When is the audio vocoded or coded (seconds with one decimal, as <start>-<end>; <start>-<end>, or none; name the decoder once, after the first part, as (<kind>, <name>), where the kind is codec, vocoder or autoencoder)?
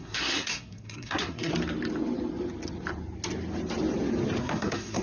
0.0-1.5 (codec, SNAC); 4.4-5.0